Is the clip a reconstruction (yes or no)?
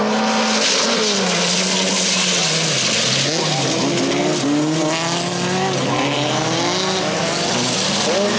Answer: no